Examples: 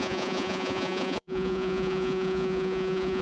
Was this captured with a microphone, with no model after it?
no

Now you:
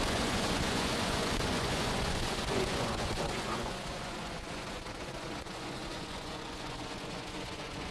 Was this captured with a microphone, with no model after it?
no